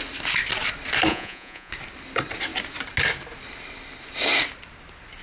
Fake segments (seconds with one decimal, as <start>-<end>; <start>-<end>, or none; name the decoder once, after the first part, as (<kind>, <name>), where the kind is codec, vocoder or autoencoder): 1.1-1.7 (vocoder, Vocos)